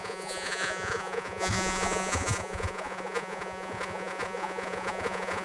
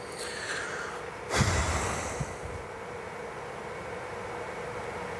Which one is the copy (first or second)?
first